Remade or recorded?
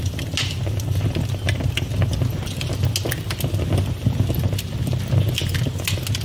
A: recorded